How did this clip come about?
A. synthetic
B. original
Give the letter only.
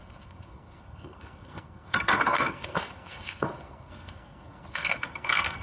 A